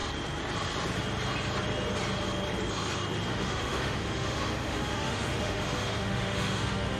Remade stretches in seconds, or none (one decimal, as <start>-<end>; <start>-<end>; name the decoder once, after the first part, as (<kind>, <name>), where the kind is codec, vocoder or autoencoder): 3.3-7.0 (autoencoder, DAC-VAE)